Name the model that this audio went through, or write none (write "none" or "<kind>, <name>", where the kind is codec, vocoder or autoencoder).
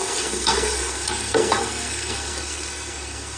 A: codec, SNAC